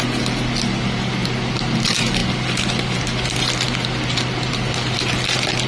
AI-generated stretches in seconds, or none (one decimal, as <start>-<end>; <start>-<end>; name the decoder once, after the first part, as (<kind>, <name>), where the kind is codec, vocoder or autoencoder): none